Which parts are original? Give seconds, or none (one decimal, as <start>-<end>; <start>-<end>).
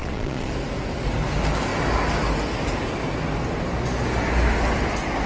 0.5-5.3